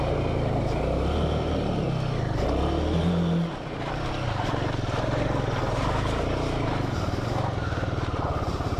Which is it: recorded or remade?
recorded